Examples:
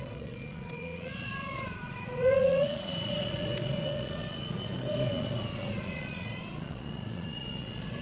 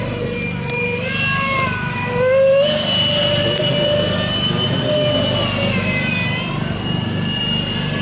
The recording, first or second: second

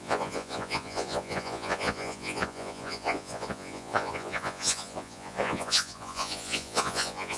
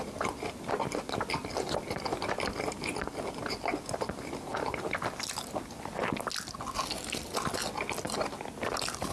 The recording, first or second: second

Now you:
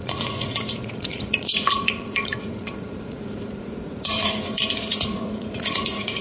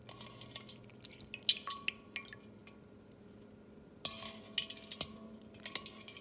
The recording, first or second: second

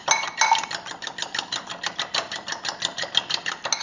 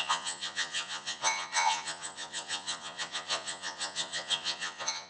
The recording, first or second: first